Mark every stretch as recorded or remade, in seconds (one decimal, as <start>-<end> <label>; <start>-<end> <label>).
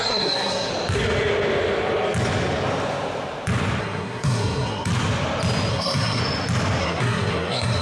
0.0-0.7 remade; 0.7-3.8 recorded; 3.8-4.9 remade; 4.9-5.7 recorded; 5.7-6.2 remade; 6.2-6.8 recorded; 6.8-7.8 remade